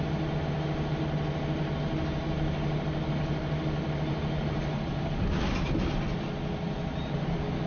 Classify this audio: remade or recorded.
recorded